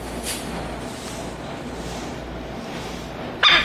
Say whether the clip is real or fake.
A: real